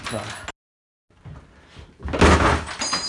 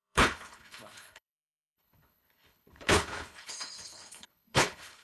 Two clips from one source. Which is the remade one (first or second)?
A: second